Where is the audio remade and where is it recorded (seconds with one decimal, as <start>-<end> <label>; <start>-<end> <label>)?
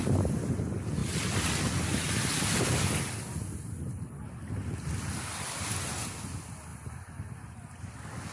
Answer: 0.0-8.3 recorded